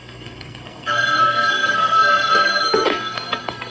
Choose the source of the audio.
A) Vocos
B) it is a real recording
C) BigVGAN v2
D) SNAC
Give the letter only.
D